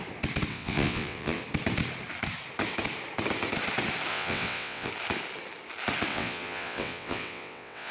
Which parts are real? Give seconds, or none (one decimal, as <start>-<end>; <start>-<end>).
0.0-0.5; 1.4-4.1; 4.9-6.1